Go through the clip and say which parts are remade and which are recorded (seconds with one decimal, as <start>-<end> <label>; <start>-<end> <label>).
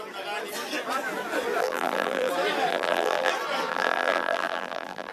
0.0-1.6 recorded; 1.6-2.3 remade; 2.3-2.7 recorded; 2.7-3.3 remade; 3.3-3.7 recorded; 3.7-5.1 remade